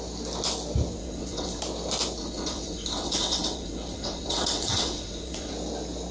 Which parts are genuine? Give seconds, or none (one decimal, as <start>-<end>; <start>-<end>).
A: 0.0-1.0; 1.6-2.2; 5.5-6.1

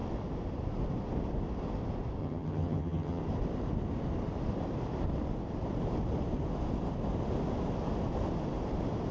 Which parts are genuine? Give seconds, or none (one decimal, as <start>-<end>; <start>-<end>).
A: 0.0-2.2; 3.2-9.1

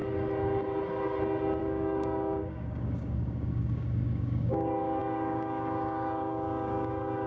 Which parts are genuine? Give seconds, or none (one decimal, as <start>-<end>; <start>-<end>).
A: 0.0-1.6

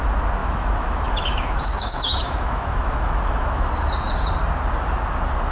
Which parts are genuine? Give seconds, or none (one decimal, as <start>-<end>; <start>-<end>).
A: 0.0-0.4; 3.7-5.5